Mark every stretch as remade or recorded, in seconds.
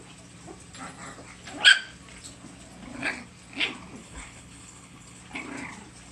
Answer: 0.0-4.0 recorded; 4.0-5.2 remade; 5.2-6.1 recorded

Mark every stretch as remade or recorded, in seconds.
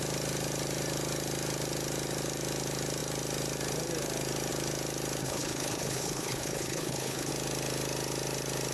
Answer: 0.0-5.2 recorded; 5.2-7.3 remade; 7.3-8.7 recorded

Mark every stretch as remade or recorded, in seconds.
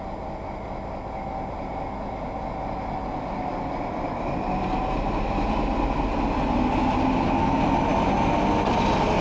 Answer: 0.0-9.2 recorded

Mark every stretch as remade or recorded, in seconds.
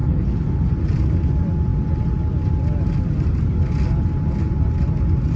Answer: 0.0-0.7 remade; 0.7-5.4 recorded